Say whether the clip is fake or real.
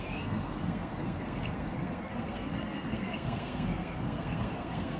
fake